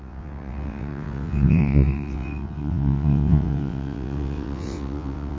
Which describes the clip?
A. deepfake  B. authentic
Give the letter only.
A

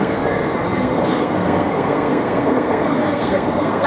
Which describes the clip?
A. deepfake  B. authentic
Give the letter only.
A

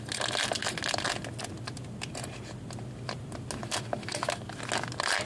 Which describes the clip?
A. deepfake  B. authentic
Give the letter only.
B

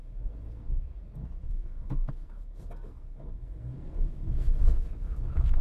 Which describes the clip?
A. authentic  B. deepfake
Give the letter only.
B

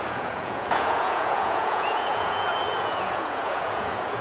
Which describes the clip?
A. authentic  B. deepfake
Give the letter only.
B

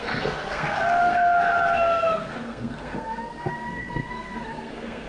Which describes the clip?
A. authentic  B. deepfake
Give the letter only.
B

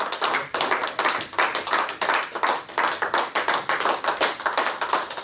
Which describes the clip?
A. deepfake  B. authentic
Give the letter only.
B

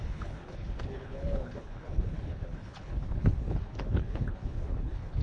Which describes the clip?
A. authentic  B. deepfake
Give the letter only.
B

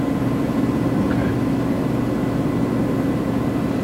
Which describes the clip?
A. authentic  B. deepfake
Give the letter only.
A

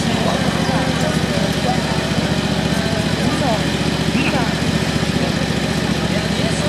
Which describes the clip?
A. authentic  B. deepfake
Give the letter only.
A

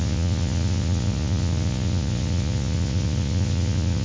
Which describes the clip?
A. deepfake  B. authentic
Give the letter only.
A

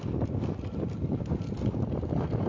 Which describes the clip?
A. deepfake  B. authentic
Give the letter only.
B